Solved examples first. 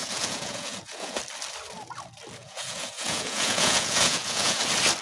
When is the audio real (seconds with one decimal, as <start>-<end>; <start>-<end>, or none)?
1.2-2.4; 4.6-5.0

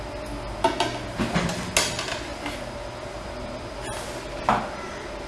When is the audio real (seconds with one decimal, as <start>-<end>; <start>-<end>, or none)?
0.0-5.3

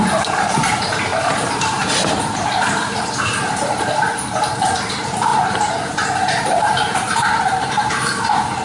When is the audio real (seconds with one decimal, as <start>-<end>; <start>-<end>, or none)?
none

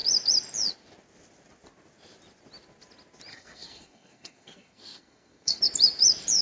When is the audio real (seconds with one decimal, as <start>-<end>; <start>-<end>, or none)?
0.0-3.3; 5.6-6.4

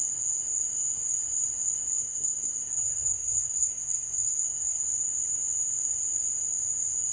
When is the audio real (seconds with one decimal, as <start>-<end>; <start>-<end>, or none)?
0.0-2.0; 4.8-7.1